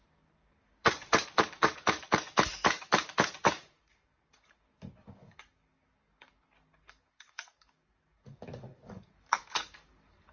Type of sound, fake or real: fake